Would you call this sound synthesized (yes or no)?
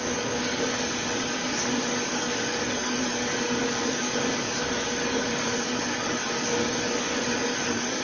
yes